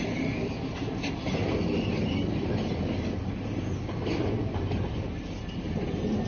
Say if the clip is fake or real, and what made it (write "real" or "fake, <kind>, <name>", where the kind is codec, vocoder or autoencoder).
real